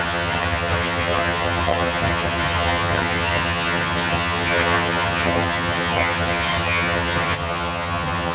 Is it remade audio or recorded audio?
remade